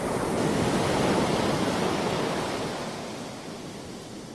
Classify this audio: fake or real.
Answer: real